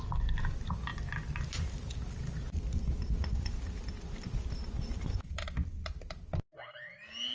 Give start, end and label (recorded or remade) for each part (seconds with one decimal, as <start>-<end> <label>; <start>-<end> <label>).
0.0-7.3 recorded